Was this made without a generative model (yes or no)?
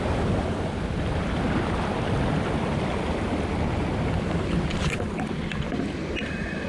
yes